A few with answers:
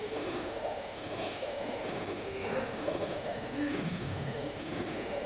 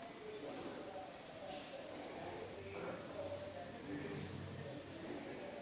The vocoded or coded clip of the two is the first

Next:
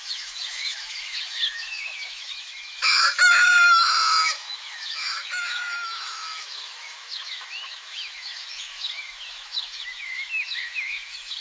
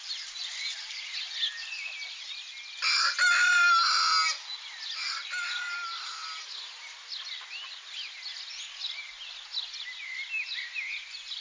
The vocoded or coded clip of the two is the first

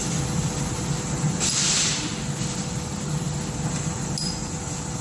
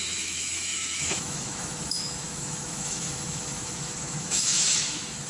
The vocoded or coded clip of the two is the second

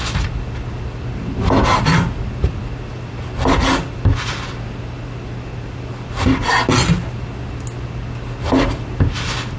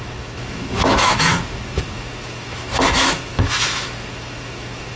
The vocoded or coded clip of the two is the second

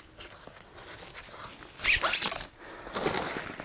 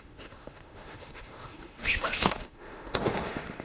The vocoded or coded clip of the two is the second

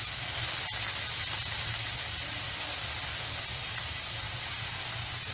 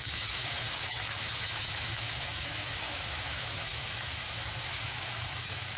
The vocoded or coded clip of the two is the second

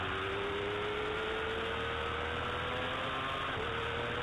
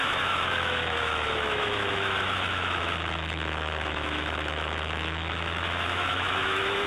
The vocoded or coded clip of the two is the second